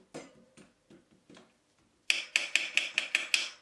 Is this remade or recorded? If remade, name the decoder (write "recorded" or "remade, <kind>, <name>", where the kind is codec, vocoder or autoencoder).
recorded